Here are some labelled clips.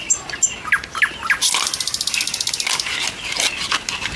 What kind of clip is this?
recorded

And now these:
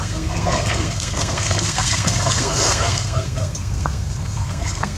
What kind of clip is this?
remade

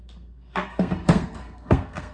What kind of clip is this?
remade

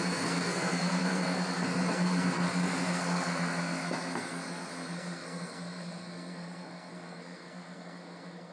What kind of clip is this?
remade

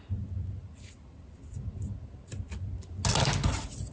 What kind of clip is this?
recorded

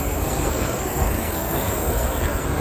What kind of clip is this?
remade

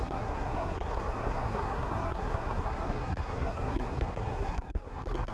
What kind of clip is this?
remade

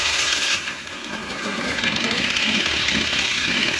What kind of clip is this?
remade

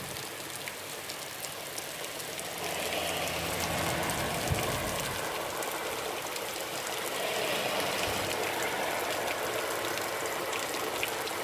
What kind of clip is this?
recorded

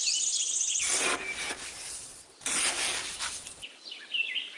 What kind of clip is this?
recorded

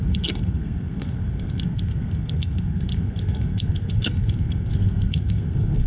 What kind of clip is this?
remade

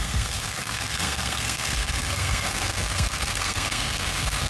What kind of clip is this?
remade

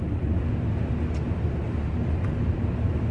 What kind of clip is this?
recorded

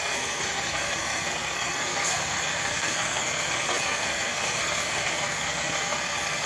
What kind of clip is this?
remade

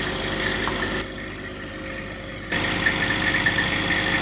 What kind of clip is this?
recorded